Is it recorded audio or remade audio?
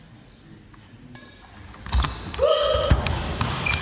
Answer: recorded